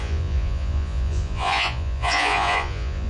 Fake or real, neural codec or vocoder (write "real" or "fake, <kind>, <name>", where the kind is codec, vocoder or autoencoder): fake, vocoder, Vocos